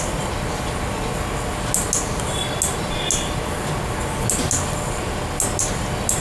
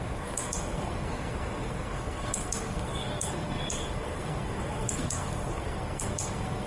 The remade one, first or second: second